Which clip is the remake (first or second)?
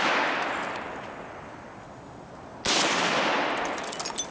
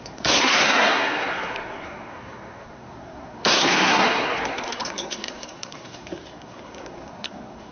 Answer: second